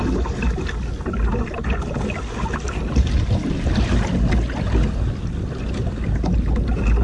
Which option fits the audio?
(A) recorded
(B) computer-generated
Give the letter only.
A